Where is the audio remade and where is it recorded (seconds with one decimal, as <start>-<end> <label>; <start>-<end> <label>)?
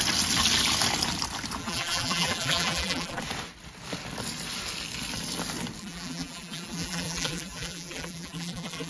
0.0-1.6 recorded; 1.6-3.2 remade; 3.2-5.8 recorded; 5.8-8.9 remade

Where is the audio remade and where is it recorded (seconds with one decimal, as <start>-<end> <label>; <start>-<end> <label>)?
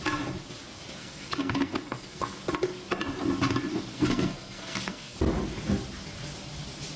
0.0-1.0 recorded; 1.0-2.4 remade; 2.4-3.9 recorded; 3.9-5.2 remade; 5.2-7.0 recorded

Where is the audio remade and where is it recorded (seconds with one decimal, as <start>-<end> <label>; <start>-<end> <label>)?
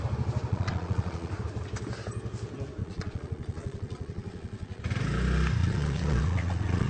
0.0-0.5 recorded; 0.5-1.3 remade; 1.3-2.8 recorded; 2.8-4.8 remade; 4.8-5.6 recorded; 5.6-6.9 remade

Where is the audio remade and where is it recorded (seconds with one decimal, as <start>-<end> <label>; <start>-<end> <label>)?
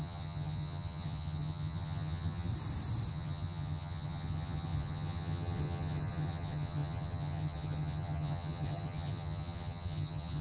0.0-2.5 remade; 2.5-3.1 recorded; 3.1-10.4 remade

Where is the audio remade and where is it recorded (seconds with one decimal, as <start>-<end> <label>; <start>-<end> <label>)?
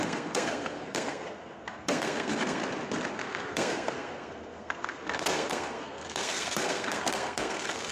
0.0-2.6 remade; 2.6-3.1 recorded; 3.1-7.9 remade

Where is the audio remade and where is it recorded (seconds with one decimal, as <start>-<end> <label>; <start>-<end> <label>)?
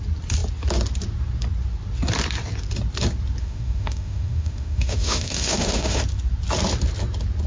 0.0-3.4 recorded; 3.4-6.0 remade; 6.0-7.5 recorded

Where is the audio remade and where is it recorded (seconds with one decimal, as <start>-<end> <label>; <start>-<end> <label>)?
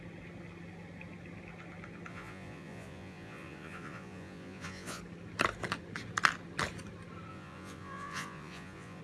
0.0-2.1 recorded; 2.1-5.0 remade; 5.0-7.3 recorded; 7.3-9.0 remade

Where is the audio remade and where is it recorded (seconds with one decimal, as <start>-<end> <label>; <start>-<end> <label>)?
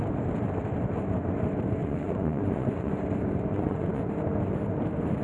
0.0-1.8 recorded; 1.8-2.9 remade; 2.9-3.5 recorded; 3.5-4.0 remade; 4.0-5.2 recorded